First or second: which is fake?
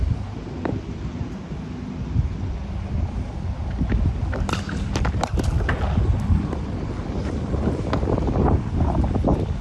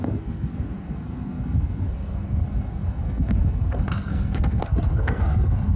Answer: second